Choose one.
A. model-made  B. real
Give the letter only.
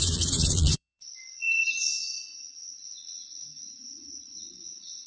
A